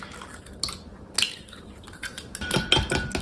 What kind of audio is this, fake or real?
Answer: real